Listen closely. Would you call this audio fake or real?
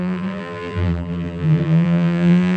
fake